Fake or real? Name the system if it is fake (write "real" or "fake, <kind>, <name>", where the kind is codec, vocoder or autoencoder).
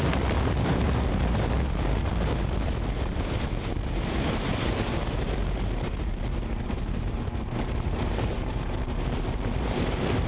fake, vocoder, BigVGAN v2